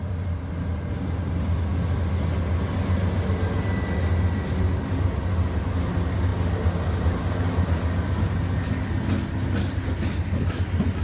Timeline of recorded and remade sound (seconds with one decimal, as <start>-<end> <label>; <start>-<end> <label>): 0.0-11.0 recorded

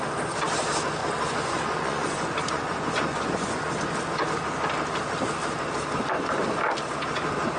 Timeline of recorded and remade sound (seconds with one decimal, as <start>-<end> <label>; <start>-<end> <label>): 0.0-1.0 recorded; 1.0-3.7 remade; 3.7-7.6 recorded

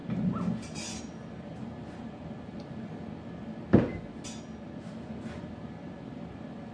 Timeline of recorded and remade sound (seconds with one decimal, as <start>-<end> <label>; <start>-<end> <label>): 0.0-1.0 recorded; 1.0-1.5 remade; 1.5-5.5 recorded; 5.5-6.7 remade

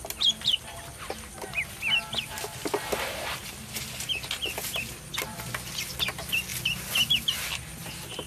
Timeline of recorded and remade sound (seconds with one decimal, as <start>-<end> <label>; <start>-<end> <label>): 0.0-8.3 recorded

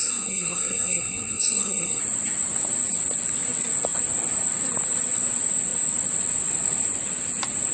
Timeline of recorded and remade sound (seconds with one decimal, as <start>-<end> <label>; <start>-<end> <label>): 0.0-2.0 remade; 2.0-7.7 recorded